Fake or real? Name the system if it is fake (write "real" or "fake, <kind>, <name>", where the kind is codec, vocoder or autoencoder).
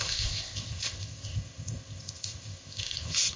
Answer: fake, codec, ZipCodec